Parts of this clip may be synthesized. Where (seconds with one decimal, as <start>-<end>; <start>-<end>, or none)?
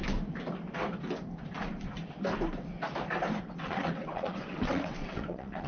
3.4-5.7